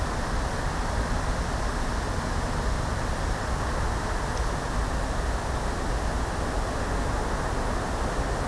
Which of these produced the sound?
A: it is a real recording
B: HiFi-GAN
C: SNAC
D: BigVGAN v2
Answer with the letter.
A